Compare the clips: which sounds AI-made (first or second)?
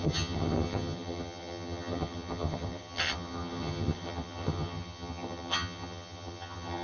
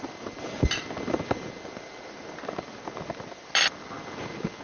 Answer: first